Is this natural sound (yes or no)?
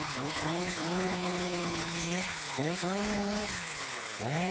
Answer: no